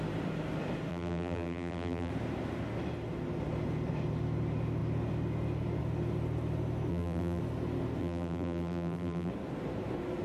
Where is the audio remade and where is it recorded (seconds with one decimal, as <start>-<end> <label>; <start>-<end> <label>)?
0.0-0.9 recorded; 0.9-2.1 remade; 2.1-6.9 recorded; 6.9-7.4 remade; 7.4-8.0 recorded; 8.0-9.3 remade; 9.3-10.2 recorded